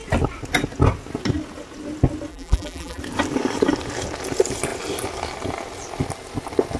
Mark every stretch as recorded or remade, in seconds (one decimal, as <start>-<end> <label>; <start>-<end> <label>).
0.0-2.3 recorded; 2.3-3.0 remade; 3.0-6.8 recorded